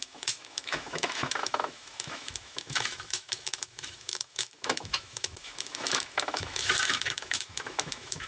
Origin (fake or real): fake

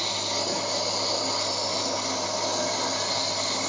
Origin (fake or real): real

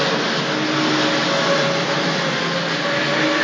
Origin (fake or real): real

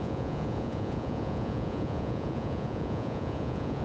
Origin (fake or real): fake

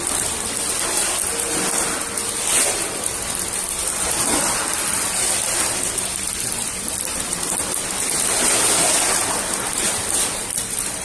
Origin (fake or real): real